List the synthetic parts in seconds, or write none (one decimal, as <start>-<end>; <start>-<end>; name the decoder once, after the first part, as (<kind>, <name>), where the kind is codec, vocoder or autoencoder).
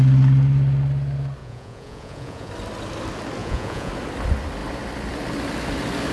1.4-2.5 (vocoder, Vocos); 3.4-3.9